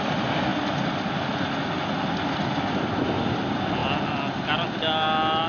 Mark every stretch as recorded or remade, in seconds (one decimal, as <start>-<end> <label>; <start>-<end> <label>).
0.0-5.5 recorded